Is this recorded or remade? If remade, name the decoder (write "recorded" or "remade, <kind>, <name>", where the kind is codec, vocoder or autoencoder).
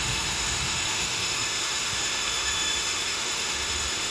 remade, autoencoder, DAC-VAE